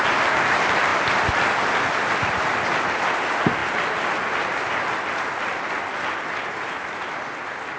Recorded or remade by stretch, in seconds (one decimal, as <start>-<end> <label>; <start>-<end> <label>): 0.0-7.8 recorded